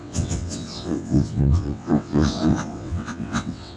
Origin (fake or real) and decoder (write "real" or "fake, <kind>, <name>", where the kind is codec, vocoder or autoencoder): fake, vocoder, WaveNeXt